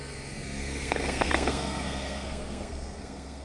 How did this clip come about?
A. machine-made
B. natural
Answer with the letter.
A